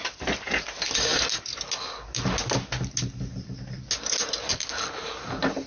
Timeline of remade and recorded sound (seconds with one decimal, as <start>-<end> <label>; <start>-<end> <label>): 0.0-5.7 recorded